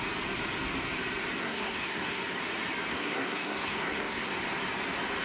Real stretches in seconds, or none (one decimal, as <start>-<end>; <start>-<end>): 0.0-1.4; 2.2-2.9; 4.3-5.2